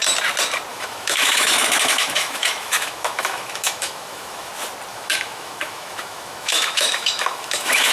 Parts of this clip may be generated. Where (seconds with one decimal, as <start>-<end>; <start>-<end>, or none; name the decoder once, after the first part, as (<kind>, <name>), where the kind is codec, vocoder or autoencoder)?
0.7-4.5 (autoencoder, DAC-VAE); 4.9-7.9